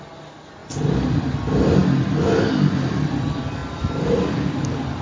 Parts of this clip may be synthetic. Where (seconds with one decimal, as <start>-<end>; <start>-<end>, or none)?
3.6-4.2